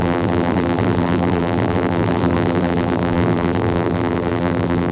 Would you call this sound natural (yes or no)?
no